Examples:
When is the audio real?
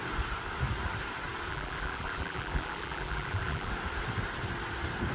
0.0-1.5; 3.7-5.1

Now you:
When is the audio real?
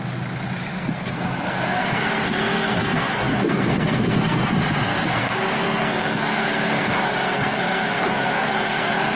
0.0-0.7; 4.5-4.9